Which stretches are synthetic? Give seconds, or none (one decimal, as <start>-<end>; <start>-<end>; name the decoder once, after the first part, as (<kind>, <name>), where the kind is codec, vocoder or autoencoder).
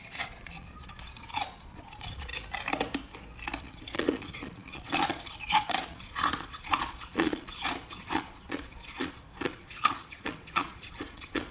0.0-2.3 (vocoder, Vocos); 3.6-11.5